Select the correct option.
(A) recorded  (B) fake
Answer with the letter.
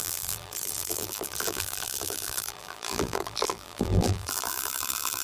B